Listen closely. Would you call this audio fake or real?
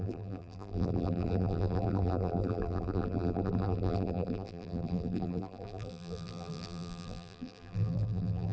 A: fake